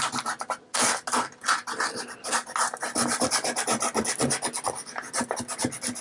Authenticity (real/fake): real